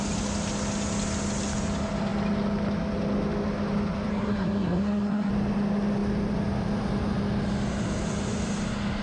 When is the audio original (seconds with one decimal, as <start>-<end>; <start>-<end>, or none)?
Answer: 0.0-4.1; 5.3-9.0